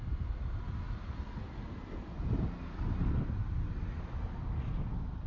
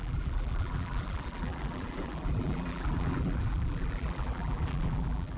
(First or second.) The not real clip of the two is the second